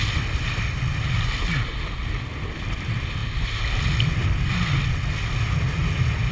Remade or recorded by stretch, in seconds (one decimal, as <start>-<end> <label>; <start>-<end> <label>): 0.0-6.3 recorded